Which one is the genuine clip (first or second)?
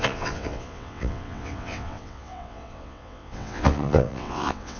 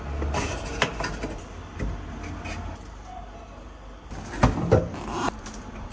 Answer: second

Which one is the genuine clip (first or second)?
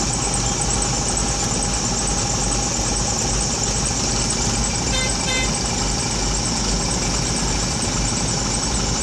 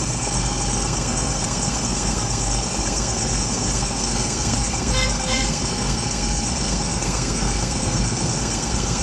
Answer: first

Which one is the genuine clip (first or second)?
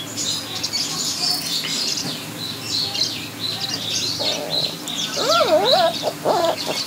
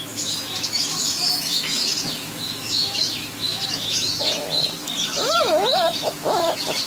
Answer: first